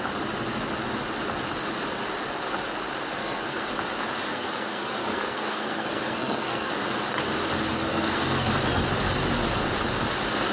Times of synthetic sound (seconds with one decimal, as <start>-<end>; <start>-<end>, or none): 3.2-3.7; 4.3-6.7; 7.7-8.5